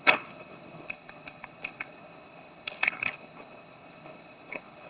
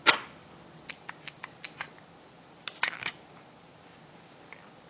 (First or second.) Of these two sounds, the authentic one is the second